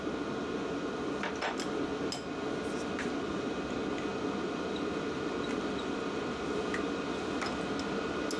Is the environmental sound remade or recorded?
recorded